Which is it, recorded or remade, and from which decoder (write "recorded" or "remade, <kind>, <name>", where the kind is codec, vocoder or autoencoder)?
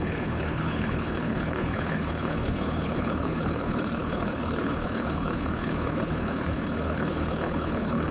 remade, codec, HILCodec